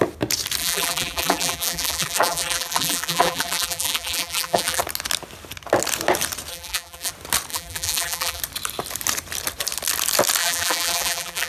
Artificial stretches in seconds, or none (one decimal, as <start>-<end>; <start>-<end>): 0.6-4.8; 6.5-7.1; 7.5-8.4; 10.4-11.5